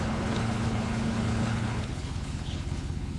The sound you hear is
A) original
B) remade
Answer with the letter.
B